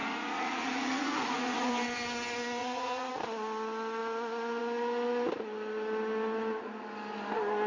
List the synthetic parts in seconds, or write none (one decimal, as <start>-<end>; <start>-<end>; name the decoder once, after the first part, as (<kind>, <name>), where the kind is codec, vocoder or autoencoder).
0.0-1.7 (vocoder, Vocos); 2.6-3.1